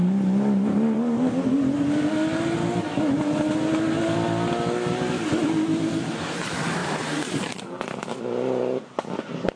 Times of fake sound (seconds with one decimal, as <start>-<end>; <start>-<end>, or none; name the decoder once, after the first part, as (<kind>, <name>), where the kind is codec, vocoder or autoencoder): 6.8-7.6 (vocoder, BigVGAN v2)